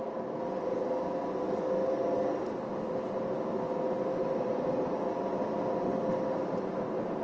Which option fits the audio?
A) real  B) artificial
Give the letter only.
A